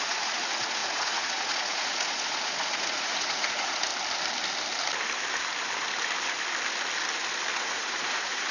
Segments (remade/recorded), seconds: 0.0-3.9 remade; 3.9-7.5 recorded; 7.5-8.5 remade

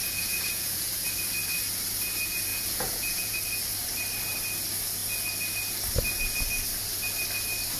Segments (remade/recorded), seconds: 0.0-1.1 remade; 1.1-2.5 recorded; 2.5-3.4 remade; 3.4-7.8 recorded

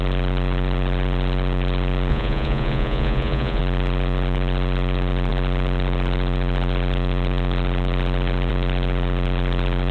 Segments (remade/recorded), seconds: 0.0-2.1 recorded; 2.1-3.6 remade; 3.6-9.9 recorded

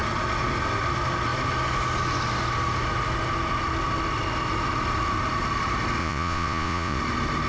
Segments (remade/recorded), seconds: 0.0-6.0 recorded; 6.0-7.0 remade; 7.0-7.5 recorded

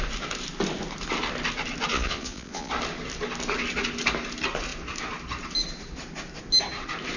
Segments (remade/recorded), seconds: 0.0-1.9 recorded; 1.9-2.7 remade; 2.7-7.2 recorded

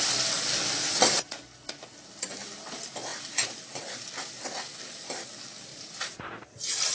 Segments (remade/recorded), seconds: 0.0-0.8 recorded; 0.8-1.4 remade; 1.4-5.7 recorded; 5.7-6.5 remade; 6.5-6.9 recorded

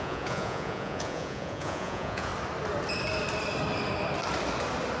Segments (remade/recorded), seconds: 0.0-2.3 remade; 2.3-5.0 recorded